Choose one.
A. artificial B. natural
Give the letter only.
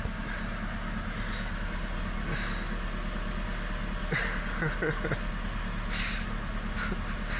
B